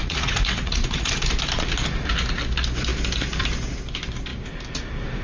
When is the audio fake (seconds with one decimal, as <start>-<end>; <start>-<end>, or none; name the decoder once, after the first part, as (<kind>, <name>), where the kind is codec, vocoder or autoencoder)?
0.0-1.1 (vocoder, Vocos)